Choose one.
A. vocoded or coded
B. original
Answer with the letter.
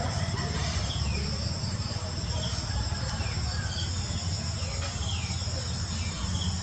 B